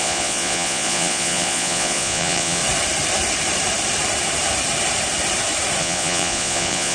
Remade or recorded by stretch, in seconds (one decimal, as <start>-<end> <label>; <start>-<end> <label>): 0.0-2.6 remade; 2.6-5.8 recorded; 5.8-6.9 remade